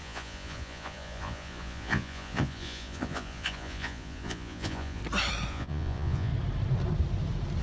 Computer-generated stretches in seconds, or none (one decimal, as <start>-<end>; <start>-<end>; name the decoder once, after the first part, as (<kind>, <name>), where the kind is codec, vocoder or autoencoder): 0.0-5.0 (vocoder, Vocos); 5.5-6.3